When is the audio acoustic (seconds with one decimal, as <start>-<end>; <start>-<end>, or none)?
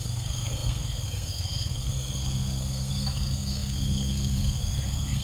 none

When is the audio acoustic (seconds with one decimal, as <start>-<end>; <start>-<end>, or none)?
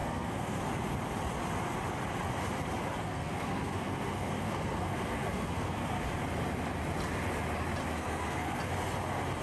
0.6-3.0; 6.0-7.8; 8.6-9.4